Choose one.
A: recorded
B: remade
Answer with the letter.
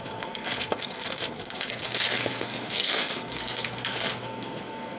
B